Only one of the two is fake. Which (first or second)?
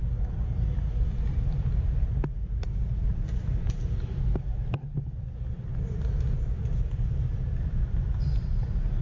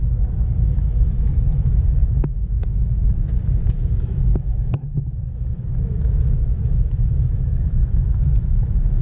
second